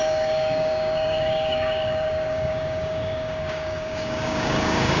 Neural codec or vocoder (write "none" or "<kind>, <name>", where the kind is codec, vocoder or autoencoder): codec, DAC